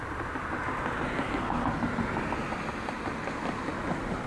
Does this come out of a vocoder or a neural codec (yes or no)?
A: no